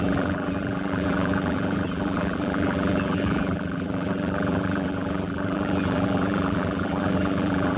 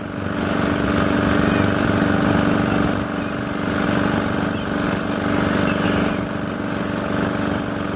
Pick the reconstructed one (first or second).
first